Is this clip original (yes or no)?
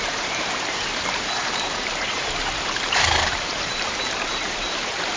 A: no